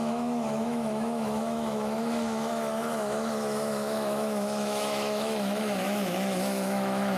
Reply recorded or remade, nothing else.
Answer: remade